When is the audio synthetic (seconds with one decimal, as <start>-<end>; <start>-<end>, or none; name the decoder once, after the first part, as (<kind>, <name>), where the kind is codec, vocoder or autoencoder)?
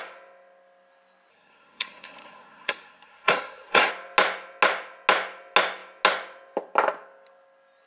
1.3-3.9 (codec, SNAC)